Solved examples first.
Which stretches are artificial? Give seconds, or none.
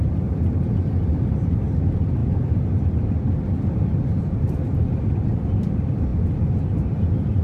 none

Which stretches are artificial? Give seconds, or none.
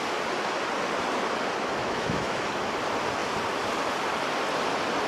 1.8-2.5 (autoencoder, DAC-VAE)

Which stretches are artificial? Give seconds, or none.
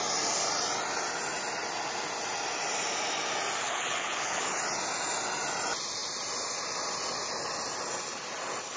3.6-4.6 (codec, HILCodec)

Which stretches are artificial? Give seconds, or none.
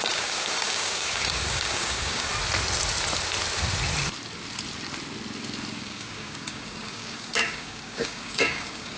0.0-2.3 (codec, DAC); 5.7-9.0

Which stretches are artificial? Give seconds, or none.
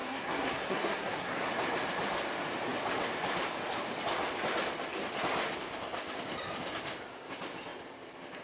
0.0-1.5 (codec, SNAC)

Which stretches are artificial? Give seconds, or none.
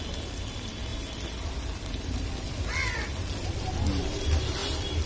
4.6-5.1 (vocoder, BigVGAN v2)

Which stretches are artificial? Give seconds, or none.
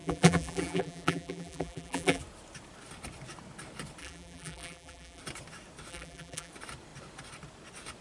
0.0-2.2 (vocoder, BigVGAN v2); 4.0-5.2; 5.9-6.5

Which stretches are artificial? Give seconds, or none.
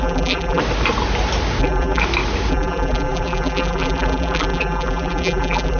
0.0-0.6 (vocoder, BigVGAN v2); 1.6-2.0; 2.5-5.8